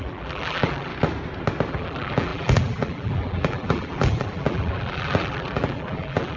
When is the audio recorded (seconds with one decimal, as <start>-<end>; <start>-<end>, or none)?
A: 0.9-1.7